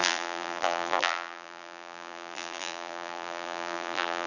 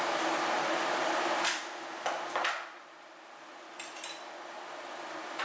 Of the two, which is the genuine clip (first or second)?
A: second